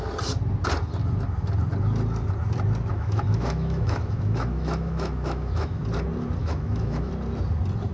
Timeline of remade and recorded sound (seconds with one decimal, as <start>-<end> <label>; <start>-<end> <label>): 0.0-2.9 recorded; 2.9-5.8 remade; 5.8-6.4 recorded; 6.4-7.1 remade; 7.1-7.9 recorded